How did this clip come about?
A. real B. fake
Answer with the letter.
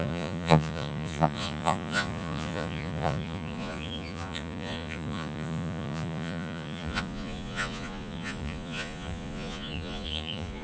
B